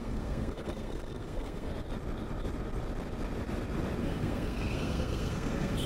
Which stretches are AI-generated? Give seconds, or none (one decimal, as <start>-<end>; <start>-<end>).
0.0-1.7; 4.0-5.9